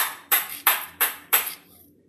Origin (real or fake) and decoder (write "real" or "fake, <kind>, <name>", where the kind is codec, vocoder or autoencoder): fake, vocoder, BigVGAN v2